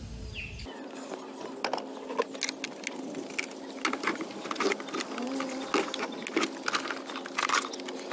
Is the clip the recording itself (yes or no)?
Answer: yes